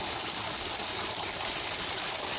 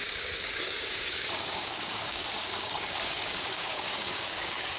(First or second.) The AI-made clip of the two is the second